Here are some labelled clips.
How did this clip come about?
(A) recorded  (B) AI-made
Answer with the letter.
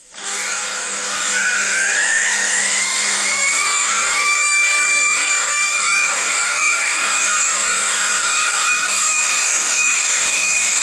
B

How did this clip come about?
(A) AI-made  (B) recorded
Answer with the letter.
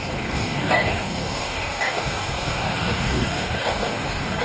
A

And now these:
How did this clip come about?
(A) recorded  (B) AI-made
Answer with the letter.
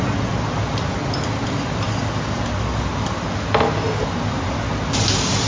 A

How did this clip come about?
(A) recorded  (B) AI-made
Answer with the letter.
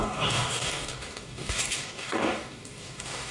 B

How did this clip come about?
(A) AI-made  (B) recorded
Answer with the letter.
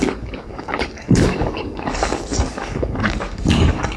A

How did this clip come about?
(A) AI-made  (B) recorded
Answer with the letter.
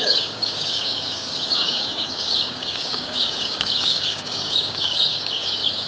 A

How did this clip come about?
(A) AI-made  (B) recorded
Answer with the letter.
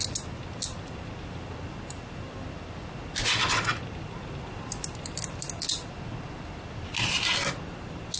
B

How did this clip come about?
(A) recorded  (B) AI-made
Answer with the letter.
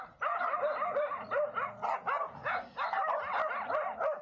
A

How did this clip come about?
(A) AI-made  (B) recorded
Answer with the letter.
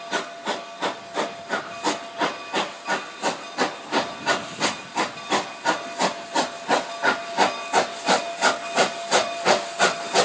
B